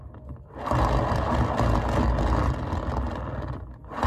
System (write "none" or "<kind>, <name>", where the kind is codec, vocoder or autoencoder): none